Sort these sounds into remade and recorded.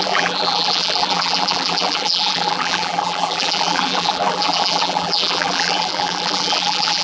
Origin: remade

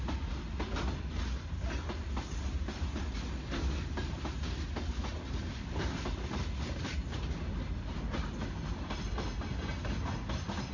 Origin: recorded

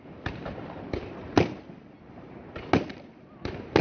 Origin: recorded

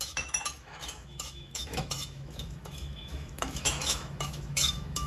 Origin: remade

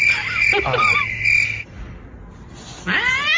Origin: recorded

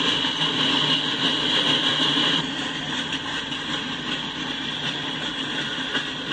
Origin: recorded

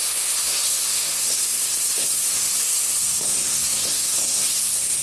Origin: remade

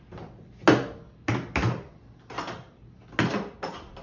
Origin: recorded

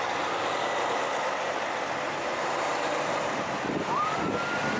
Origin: recorded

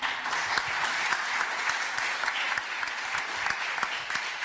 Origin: recorded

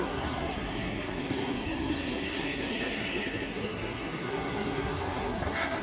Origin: remade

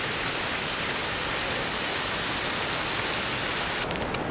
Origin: recorded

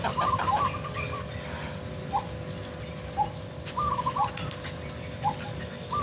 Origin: recorded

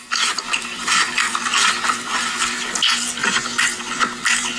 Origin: recorded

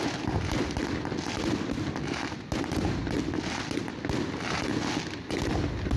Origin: recorded